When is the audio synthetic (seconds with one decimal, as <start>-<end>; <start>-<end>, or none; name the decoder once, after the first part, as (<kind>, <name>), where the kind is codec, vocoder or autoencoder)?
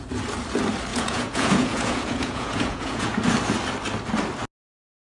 0.9-3.2 (vocoder, Vocos)